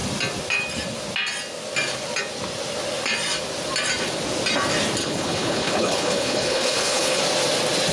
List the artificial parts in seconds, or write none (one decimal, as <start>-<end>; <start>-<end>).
5.0-7.2

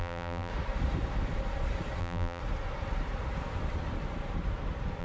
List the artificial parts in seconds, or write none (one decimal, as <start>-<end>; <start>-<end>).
0.0-0.5; 2.0-2.4

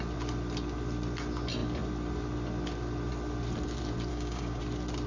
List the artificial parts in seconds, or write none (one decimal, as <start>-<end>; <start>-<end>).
4.1-4.6

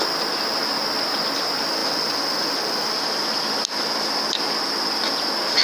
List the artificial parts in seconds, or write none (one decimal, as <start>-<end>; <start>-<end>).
none

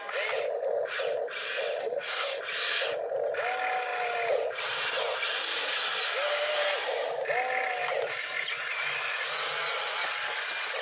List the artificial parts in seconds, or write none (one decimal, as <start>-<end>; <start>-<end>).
1.8-2.4

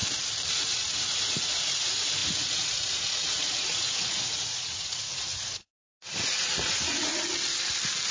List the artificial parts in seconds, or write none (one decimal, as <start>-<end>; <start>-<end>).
0.5-7.1